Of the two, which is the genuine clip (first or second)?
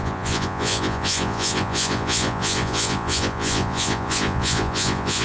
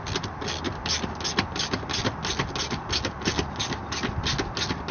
second